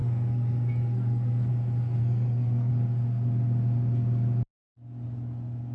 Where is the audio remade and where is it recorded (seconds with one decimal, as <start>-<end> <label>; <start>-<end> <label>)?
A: 0.0-1.5 remade; 1.5-2.0 recorded; 2.0-2.7 remade; 2.7-5.7 recorded